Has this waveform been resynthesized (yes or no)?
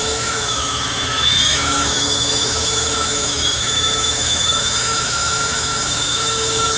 yes